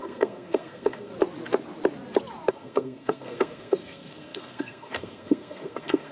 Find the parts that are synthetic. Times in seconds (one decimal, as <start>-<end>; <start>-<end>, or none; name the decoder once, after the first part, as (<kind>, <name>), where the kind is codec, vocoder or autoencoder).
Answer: 0.0-1.1 (codec, SNAC); 2.5-6.1

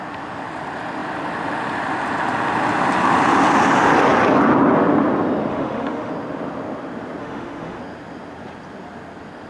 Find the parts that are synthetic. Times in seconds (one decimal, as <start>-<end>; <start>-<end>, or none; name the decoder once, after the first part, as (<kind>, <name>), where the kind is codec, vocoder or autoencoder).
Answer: 5.5-6.1 (autoencoder, DAC-VAE); 7.2-7.8

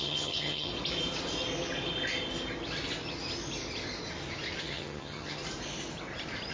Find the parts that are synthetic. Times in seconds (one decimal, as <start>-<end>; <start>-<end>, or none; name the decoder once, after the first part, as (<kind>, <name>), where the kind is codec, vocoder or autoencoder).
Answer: 0.0-0.7 (vocoder, HiFi-GAN); 4.6-5.4

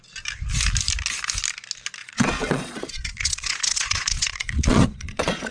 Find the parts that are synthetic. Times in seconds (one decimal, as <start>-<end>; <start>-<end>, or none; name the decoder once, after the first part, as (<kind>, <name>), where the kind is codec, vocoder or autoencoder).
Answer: 2.0-5.5 (vocoder, Vocos)

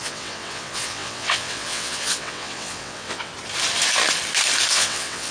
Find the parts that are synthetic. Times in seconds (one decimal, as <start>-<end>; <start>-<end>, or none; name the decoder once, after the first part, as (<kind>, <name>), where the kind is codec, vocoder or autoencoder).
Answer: 0.0-3.3 (vocoder, WaveNeXt); 4.7-5.3

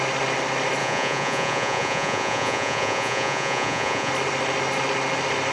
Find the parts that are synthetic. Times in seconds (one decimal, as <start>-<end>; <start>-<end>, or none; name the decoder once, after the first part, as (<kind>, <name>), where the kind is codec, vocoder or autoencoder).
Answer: 0.8-4.1 (vocoder, Vocos)